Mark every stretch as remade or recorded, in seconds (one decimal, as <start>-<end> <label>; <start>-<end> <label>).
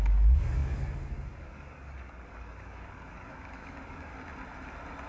0.0-4.1 remade; 4.1-5.1 recorded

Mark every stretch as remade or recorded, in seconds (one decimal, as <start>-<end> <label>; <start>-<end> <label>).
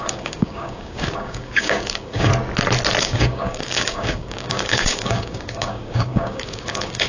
0.0-2.3 remade; 2.3-3.0 recorded; 3.0-7.1 remade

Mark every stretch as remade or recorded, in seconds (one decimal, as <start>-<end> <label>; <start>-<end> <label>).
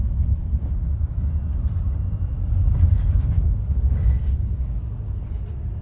0.0-0.4 recorded; 0.4-1.3 remade; 1.3-2.3 recorded; 2.3-4.9 remade; 4.9-5.8 recorded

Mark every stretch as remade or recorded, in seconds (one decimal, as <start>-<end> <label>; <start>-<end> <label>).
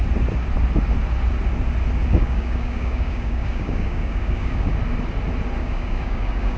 0.0-2.0 recorded; 2.0-4.7 remade; 4.7-5.6 recorded; 5.6-6.6 remade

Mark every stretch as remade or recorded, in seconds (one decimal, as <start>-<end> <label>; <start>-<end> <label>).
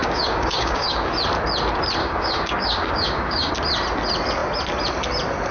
0.0-1.1 remade; 1.1-2.0 recorded; 2.0-3.5 remade; 3.5-5.5 recorded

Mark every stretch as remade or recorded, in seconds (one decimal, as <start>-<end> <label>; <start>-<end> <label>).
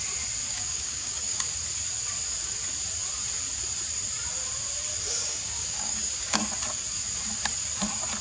0.0-0.5 recorded; 0.5-1.5 remade; 1.5-5.2 recorded; 5.2-6.4 remade; 6.4-8.2 recorded